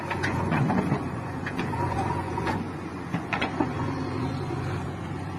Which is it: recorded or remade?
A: remade